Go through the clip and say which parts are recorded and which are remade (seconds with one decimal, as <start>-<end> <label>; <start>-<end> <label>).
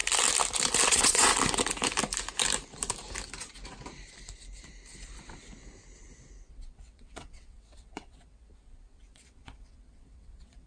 0.0-0.9 recorded; 0.9-1.3 remade; 1.3-6.5 recorded; 6.5-10.7 remade